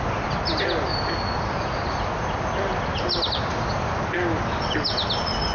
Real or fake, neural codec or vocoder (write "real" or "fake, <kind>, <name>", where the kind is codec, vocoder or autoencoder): real